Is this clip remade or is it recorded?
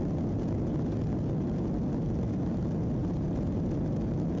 recorded